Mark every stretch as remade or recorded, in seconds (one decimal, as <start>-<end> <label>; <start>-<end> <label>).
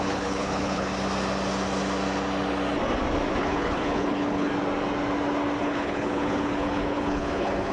0.0-0.9 remade; 0.9-3.4 recorded; 3.4-4.5 remade; 4.5-5.6 recorded; 5.6-7.7 remade